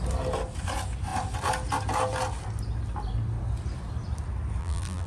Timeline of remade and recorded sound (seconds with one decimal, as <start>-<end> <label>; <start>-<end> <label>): 0.0-4.6 recorded; 4.6-5.1 remade